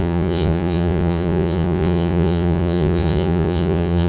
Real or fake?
fake